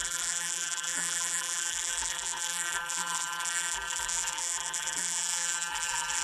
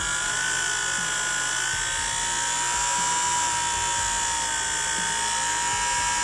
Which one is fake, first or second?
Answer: first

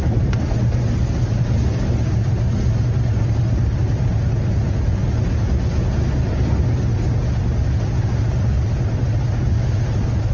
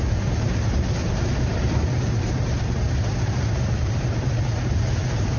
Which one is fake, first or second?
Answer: second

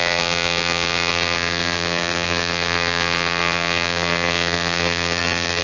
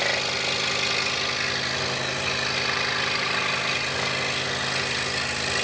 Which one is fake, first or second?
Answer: first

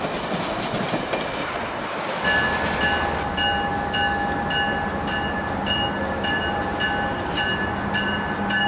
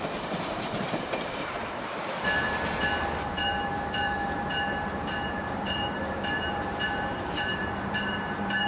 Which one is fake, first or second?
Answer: second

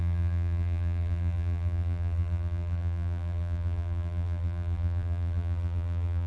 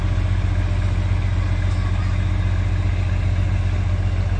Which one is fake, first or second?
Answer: first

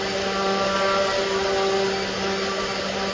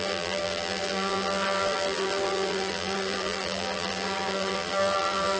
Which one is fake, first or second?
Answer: second